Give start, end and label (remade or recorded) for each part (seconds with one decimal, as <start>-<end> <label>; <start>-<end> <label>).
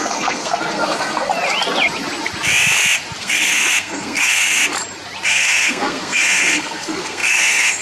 0.0-1.3 remade; 1.3-3.2 recorded; 3.2-4.6 remade; 4.6-5.3 recorded; 5.3-7.8 remade